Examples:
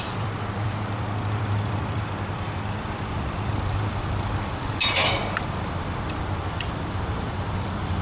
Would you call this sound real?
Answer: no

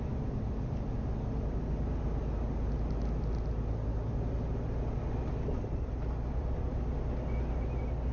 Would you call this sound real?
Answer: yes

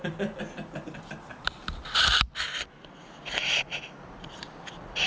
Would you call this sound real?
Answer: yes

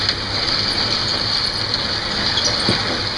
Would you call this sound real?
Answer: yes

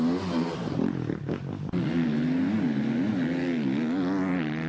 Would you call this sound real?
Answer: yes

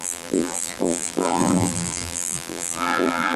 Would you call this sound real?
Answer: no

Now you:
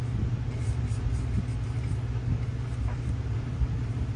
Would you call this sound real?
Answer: yes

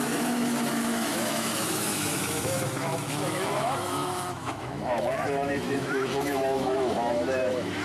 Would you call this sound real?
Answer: no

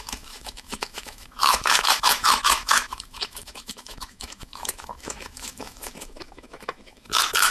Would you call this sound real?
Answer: no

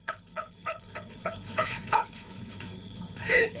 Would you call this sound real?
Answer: no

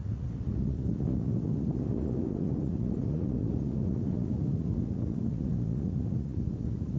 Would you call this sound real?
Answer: no